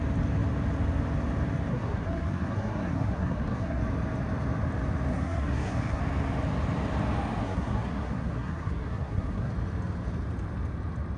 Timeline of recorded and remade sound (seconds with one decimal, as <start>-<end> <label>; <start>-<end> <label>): 0.0-1.7 recorded; 1.7-3.8 remade; 3.8-5.1 recorded; 5.1-6.0 remade; 6.0-7.4 recorded; 7.4-9.5 remade; 9.5-11.2 recorded